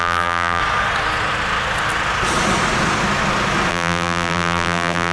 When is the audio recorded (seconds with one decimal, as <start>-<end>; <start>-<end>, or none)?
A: 0.6-3.7